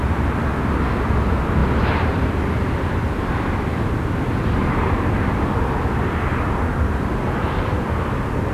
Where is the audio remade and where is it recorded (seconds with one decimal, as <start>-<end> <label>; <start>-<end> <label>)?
0.0-8.5 recorded